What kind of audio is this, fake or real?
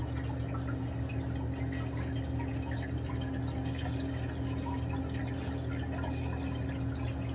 real